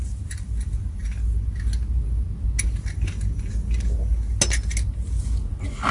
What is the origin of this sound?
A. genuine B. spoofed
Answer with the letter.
A